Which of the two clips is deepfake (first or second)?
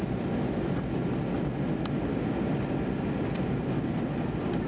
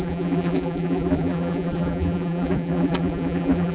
second